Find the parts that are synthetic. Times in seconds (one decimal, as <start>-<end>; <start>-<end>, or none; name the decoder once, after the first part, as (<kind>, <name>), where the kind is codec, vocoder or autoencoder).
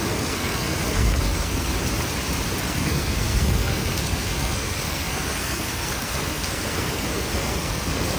0.0-1.7 (codec, SNAC); 2.6-8.2